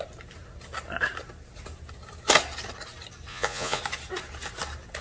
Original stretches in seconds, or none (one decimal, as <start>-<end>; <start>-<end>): 0.0-3.3; 3.8-5.0

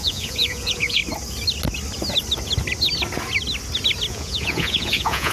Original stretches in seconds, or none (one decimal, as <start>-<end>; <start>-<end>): 1.0-4.1